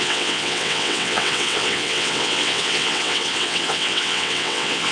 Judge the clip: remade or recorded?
remade